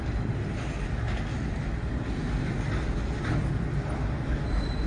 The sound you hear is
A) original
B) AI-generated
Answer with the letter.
A